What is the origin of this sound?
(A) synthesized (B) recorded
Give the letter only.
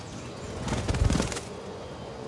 A